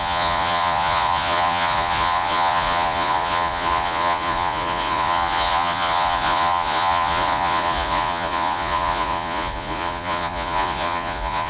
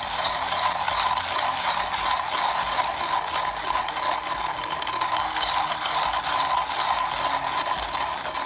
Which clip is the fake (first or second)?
first